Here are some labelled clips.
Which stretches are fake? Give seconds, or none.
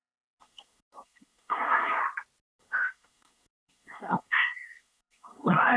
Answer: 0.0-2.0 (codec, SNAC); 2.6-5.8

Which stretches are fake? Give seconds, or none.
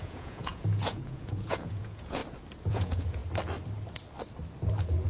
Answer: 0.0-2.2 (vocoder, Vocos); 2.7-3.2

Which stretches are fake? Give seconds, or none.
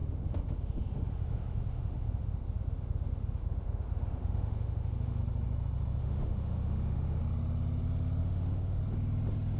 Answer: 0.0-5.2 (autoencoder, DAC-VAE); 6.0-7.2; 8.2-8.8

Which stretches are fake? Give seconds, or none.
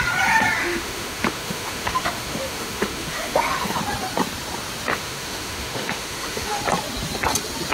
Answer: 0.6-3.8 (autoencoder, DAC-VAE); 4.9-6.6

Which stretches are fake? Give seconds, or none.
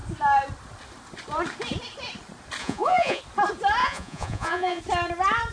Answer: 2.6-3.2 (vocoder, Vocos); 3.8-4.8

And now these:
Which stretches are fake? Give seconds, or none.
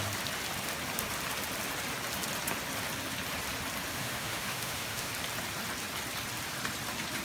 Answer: 3.9-5.1 (autoencoder, DAC-VAE)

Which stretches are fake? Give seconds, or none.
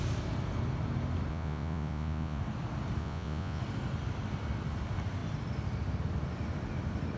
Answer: 1.3-2.4 (vocoder, Vocos); 3.0-3.6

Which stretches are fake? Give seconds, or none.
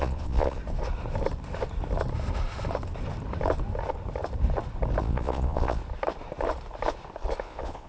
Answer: 0.0-0.6 (vocoder, Vocos); 5.0-5.8; 7.4-7.9